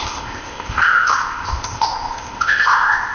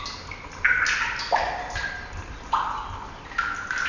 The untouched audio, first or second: second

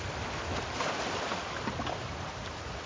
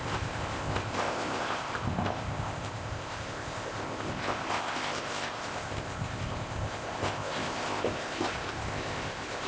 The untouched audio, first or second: first